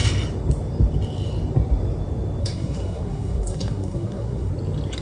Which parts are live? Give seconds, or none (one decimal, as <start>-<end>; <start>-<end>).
0.0-2.4; 4.5-5.0